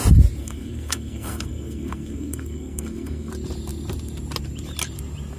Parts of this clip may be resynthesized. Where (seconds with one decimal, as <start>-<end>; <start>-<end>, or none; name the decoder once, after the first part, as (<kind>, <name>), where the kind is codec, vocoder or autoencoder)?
0.4-3.3 (codec, SNAC)